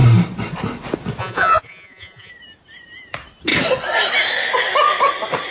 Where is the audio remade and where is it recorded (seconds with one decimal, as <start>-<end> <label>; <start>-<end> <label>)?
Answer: 0.0-1.2 recorded; 1.2-2.3 remade; 2.3-5.5 recorded